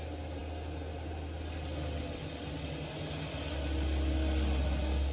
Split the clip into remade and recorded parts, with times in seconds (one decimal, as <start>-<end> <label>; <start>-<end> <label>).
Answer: 0.0-5.1 recorded